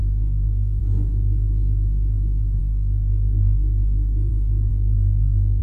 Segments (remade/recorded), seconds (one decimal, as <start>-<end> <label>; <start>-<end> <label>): 0.0-0.8 remade; 0.8-2.6 recorded; 2.6-4.3 remade; 4.3-4.7 recorded; 4.7-5.6 remade